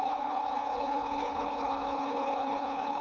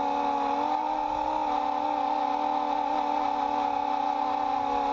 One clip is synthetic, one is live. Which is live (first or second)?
second